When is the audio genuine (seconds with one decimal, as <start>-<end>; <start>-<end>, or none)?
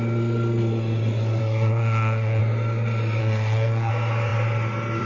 0.0-1.4; 2.4-3.2; 3.9-5.0